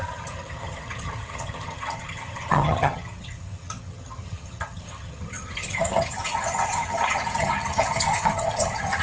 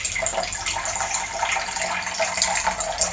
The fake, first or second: first